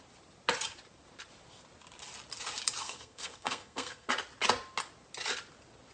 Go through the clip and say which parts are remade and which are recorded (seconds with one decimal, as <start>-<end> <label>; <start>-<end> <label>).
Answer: 0.0-2.8 recorded; 2.8-4.1 remade; 4.1-5.9 recorded